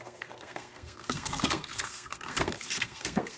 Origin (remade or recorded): remade